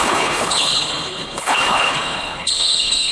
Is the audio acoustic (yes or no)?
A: no